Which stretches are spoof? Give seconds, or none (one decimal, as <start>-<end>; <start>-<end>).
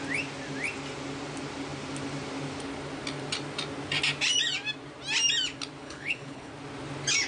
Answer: 5.8-6.5